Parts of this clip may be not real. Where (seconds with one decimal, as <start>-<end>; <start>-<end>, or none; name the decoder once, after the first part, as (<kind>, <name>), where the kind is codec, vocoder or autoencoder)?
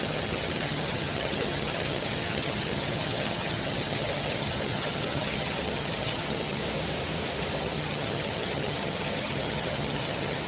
0.0-6.6 (vocoder, HiFi-GAN); 7.6-10.5